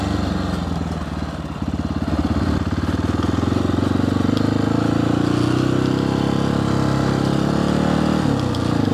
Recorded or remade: recorded